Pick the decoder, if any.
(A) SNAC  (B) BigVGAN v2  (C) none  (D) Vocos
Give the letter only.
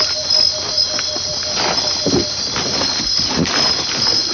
C